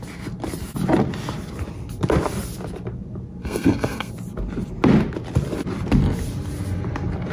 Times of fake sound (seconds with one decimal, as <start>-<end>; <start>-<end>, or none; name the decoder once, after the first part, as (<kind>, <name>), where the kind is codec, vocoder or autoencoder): 3.4-4.1 (codec, SNAC)